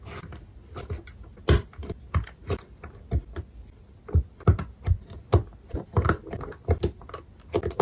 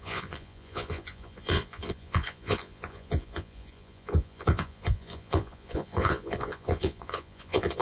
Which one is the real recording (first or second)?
first